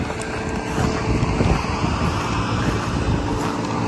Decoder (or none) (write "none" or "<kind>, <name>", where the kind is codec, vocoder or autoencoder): none